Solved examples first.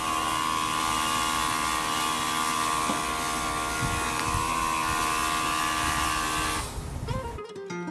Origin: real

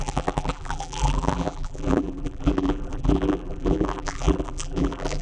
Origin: fake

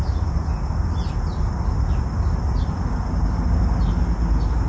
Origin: real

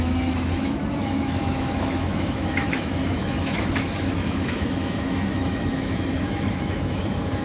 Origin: fake